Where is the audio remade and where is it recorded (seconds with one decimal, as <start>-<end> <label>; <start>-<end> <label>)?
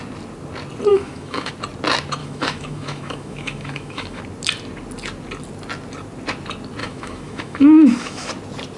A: 0.0-0.9 recorded; 0.9-1.5 remade; 1.5-2.2 recorded; 2.2-4.2 remade; 4.2-6.8 recorded; 6.8-8.3 remade; 8.3-8.8 recorded